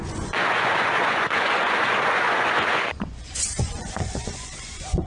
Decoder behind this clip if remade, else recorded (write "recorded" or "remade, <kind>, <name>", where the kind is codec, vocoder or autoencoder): remade, vocoder, Vocos